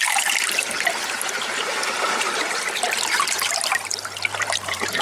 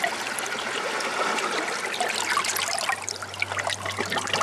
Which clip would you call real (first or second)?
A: second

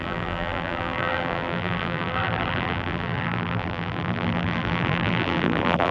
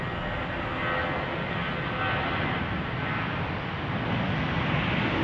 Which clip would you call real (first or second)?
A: second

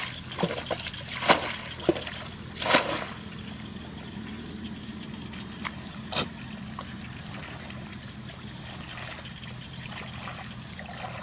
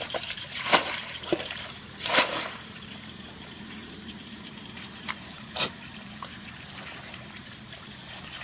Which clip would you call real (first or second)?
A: first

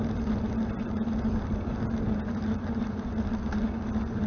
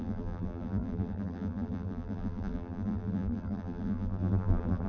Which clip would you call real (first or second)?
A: first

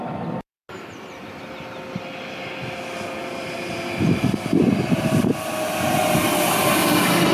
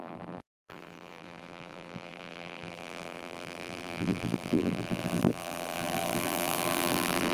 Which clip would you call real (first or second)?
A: first